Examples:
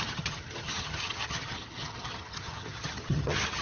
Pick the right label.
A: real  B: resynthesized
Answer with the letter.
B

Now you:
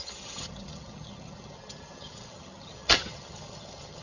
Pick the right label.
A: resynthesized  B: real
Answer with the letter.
A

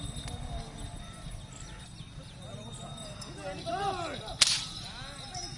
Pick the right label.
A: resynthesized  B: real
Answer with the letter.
B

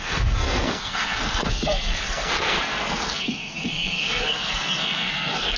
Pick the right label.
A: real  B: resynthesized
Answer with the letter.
B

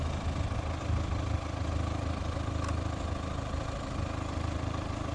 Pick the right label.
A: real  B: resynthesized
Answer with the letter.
A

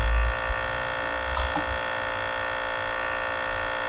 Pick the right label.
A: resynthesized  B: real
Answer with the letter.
B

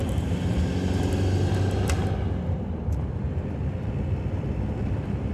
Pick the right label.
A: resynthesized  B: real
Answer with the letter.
B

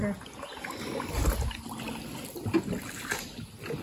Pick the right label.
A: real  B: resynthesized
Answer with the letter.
A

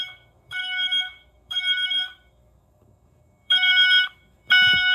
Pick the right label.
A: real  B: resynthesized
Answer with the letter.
B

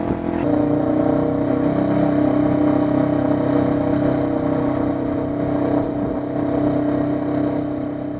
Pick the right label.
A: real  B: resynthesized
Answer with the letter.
A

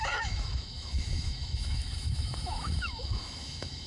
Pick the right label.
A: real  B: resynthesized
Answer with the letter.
B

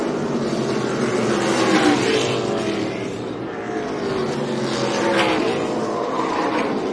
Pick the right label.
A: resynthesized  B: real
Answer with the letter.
B